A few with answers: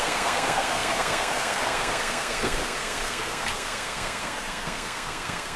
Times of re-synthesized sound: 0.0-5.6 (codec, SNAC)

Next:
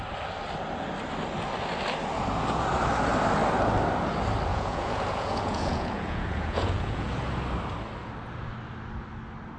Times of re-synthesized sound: 4.5-7.1 (vocoder, Vocos)